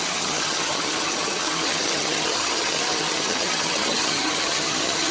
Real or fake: fake